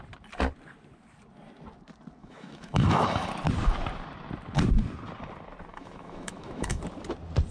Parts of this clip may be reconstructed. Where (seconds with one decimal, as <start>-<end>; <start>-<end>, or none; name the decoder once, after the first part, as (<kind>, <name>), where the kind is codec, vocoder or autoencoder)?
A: 2.2-3.3 (autoencoder, DAC-VAE); 5.7-6.8